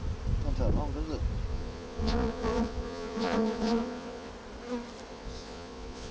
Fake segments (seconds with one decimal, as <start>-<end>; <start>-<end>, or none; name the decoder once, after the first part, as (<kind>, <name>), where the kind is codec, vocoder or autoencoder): 1.5-4.3 (vocoder, Vocos); 5.1-6.1